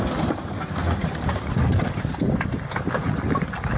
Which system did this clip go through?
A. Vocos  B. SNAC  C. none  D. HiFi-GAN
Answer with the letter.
C